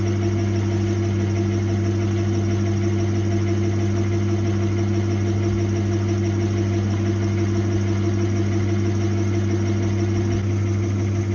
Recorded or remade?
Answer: recorded